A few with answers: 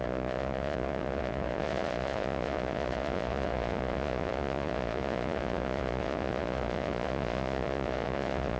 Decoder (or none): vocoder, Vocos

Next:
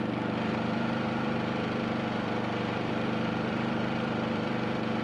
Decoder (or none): vocoder, BigVGAN v2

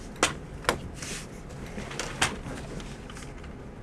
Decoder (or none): none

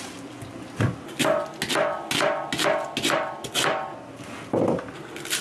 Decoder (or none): none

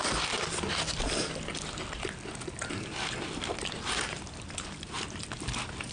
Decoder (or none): none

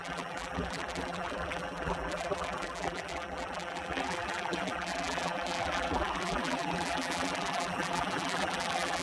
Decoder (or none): vocoder, BigVGAN v2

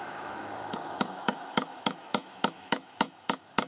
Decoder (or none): autoencoder, DAC-VAE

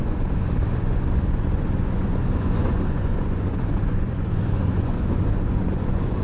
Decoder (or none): vocoder, Vocos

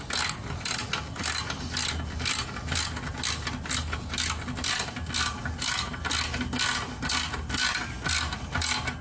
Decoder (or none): none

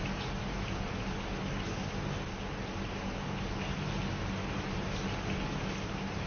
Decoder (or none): none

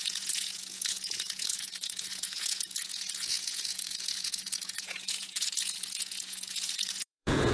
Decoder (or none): vocoder, Vocos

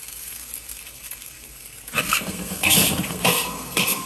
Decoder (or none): codec, SNAC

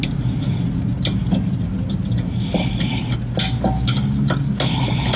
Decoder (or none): none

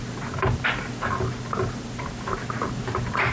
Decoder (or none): none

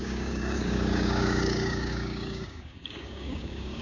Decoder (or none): codec, DAC